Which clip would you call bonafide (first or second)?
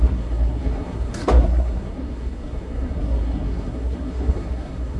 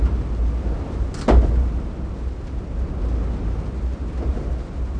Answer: second